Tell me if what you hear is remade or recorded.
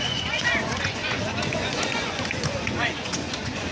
remade